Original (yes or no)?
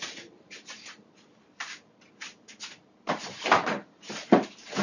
no